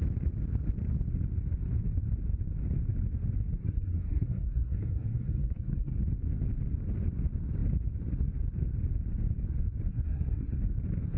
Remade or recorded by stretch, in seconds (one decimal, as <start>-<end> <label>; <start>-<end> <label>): 0.0-3.6 recorded; 3.6-5.9 remade; 5.9-9.9 recorded; 9.9-10.6 remade; 10.6-11.2 recorded